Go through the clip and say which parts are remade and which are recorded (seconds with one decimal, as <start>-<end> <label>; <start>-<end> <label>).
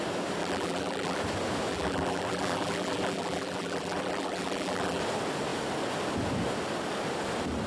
0.0-0.4 recorded; 0.4-1.2 remade; 1.2-1.7 recorded; 1.7-5.0 remade; 5.0-7.7 recorded